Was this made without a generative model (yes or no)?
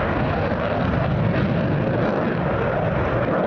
yes